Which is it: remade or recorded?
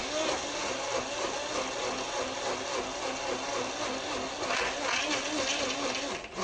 recorded